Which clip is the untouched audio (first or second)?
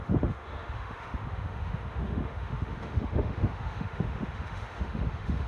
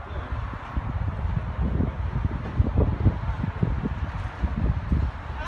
second